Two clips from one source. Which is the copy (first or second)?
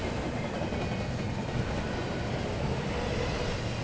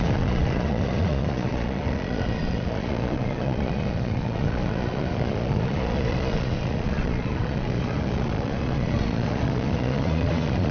second